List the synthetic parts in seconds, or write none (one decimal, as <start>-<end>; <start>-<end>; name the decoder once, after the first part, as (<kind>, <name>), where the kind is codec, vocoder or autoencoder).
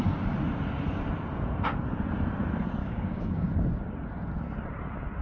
2.8-3.5 (codec, DAC)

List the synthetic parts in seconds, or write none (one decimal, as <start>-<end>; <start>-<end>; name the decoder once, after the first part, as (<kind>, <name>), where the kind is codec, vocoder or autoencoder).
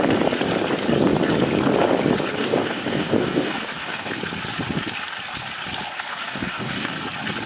2.4-4.1 (codec, DAC); 6.1-7.0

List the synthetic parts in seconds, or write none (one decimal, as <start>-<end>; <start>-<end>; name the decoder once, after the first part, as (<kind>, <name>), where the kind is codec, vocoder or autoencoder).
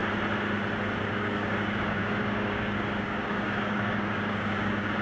1.0-5.0 (codec, DAC)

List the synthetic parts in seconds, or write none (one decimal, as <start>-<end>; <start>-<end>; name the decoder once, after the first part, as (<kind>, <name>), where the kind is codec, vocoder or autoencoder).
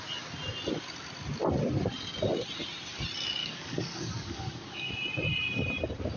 3.4-4.9 (codec, DAC)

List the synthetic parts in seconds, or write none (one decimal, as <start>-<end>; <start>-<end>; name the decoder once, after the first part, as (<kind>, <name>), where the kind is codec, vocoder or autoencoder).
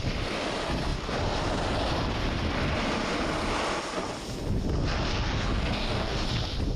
5.1-6.3 (codec, DAC)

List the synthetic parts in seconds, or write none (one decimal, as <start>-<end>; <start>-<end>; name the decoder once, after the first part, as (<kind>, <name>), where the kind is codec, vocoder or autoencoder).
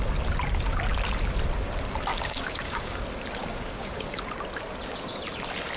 2.1-3.0 (codec, DAC); 3.4-4.2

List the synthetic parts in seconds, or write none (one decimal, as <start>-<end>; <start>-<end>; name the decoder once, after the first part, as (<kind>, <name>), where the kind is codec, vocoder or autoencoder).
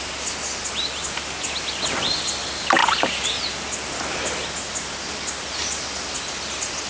none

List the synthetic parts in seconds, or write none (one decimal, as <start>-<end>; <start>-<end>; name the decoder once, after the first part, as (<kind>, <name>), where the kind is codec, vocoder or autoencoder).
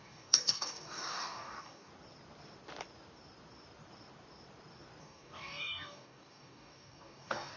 0.0-1.9 (codec, DAC); 5.0-7.6